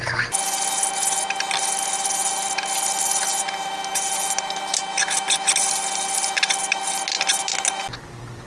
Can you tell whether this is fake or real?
real